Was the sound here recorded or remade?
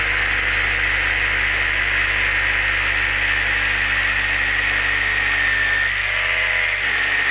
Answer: recorded